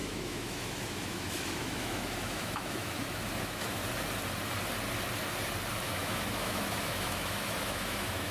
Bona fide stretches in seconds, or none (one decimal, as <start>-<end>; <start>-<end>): 3.8-5.8